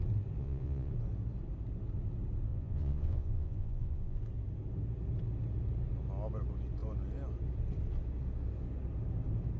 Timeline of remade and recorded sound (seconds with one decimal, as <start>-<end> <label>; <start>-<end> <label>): 0.0-0.4 recorded; 0.4-0.9 remade; 0.9-2.5 recorded; 2.5-4.2 remade; 4.2-9.6 recorded